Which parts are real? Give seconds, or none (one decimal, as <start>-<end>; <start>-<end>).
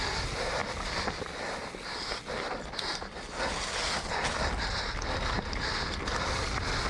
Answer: 0.0-6.9